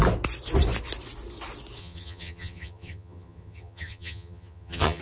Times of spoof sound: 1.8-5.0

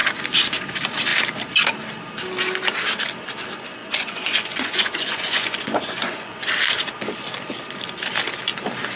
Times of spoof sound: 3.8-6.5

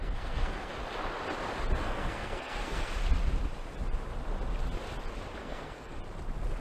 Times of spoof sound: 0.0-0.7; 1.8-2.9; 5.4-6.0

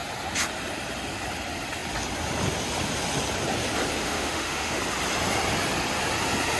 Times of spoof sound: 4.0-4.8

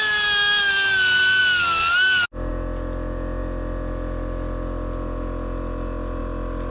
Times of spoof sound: none

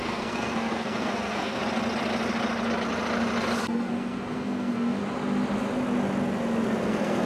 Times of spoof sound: 0.0-1.6; 3.6-5.0; 6.8-7.3